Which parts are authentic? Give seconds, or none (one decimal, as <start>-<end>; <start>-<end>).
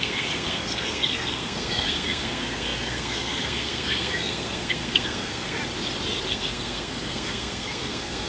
5.6-6.3